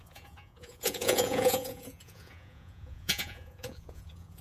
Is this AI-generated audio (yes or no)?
yes